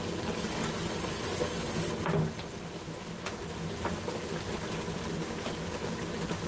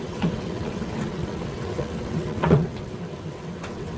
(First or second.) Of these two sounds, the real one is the first